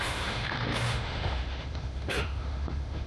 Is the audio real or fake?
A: fake